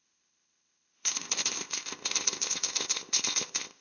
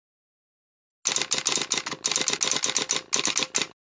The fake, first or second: first